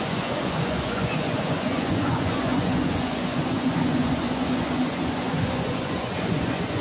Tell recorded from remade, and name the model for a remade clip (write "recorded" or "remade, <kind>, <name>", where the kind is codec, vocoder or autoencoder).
remade, vocoder, Vocos